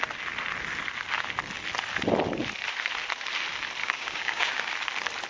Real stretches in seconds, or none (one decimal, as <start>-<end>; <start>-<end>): 0.0-3.8; 4.7-5.3